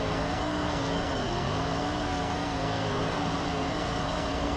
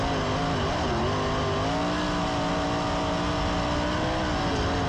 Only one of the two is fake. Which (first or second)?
first